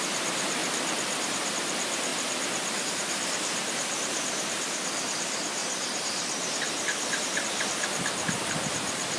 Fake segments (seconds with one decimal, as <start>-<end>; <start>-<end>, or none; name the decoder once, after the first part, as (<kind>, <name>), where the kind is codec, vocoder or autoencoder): 0.0-0.6 (vocoder, BigVGAN v2); 1.5-2.1; 2.8-9.2